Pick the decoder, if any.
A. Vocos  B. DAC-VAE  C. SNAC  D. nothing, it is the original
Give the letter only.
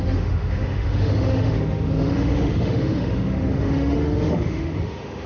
B